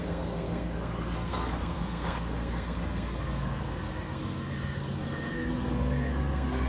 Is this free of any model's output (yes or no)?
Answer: no